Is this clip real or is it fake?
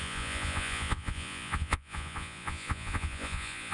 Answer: fake